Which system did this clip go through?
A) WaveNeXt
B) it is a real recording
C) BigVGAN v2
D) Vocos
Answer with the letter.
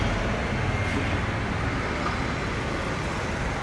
B